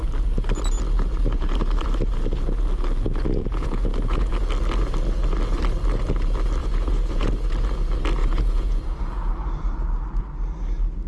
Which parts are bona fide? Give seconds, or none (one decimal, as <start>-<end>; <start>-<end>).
0.0-3.4; 4.3-6.6; 7.3-8.2; 9.3-11.1